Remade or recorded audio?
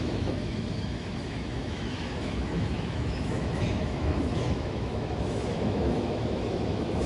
remade